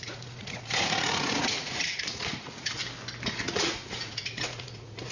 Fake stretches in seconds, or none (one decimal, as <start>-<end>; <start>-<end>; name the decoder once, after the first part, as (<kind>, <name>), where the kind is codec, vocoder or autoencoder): 0.0-2.8 (vocoder, Vocos); 3.4-5.1